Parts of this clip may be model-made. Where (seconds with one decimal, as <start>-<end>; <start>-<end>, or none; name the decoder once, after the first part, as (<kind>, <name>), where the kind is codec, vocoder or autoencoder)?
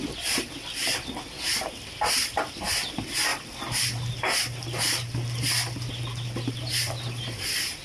none